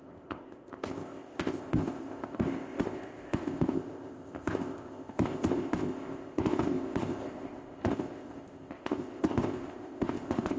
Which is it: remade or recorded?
remade